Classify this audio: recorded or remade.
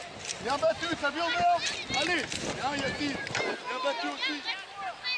recorded